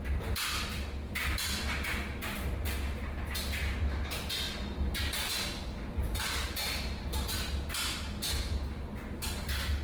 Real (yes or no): yes